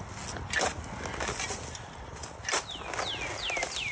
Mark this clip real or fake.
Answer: real